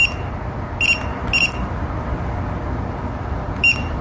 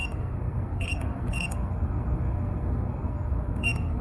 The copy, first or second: second